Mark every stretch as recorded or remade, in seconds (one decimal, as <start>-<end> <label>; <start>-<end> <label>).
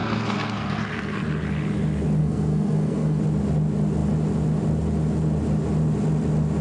0.0-1.2 remade; 1.2-2.2 recorded; 2.2-3.2 remade; 3.2-6.6 recorded